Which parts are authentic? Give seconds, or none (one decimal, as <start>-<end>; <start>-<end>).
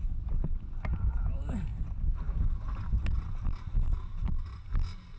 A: 0.0-5.2